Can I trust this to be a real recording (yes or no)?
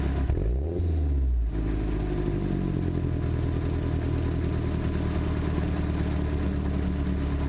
yes